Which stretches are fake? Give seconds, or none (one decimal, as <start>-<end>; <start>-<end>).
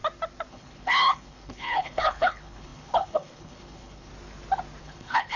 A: 0.5-4.1; 4.8-5.4